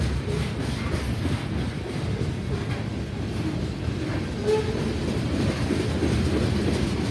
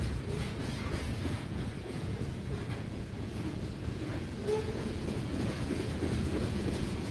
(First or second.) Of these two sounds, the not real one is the second